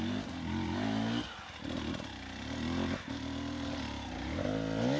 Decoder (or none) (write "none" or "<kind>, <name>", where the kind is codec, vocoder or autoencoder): none